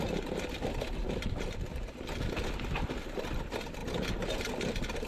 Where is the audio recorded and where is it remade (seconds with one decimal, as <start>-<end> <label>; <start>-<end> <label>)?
0.0-5.1 recorded